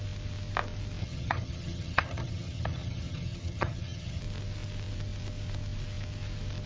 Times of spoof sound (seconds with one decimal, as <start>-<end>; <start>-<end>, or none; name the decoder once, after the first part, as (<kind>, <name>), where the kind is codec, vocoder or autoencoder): 1.0-4.2 (vocoder, HiFi-GAN)